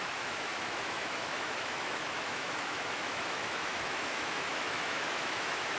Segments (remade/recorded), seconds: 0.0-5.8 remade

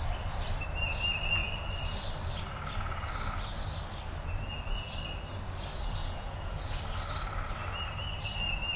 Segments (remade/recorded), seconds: 0.0-6.0 recorded; 6.0-6.8 remade; 6.8-8.8 recorded

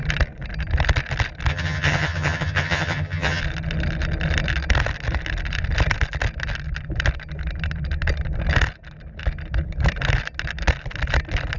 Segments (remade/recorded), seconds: 0.0-1.5 recorded; 1.5-3.4 remade; 3.4-11.6 recorded